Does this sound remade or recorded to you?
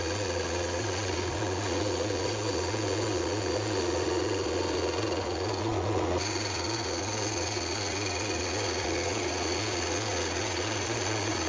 remade